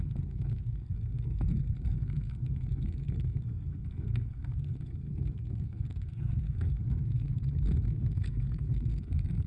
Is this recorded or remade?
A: remade